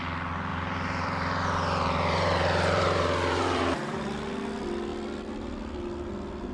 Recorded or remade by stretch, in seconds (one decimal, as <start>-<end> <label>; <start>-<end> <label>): 0.0-0.5 recorded; 0.5-4.0 remade; 4.0-6.5 recorded